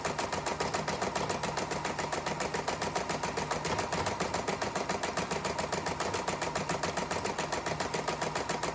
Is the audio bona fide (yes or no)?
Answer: yes